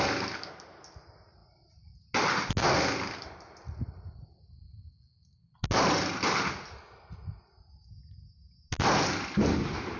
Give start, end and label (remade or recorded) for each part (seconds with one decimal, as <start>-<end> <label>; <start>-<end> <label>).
0.0-10.0 recorded